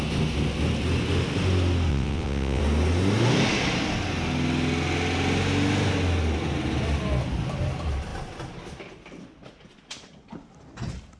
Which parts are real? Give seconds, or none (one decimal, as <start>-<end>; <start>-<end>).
0.0-1.9; 2.6-11.2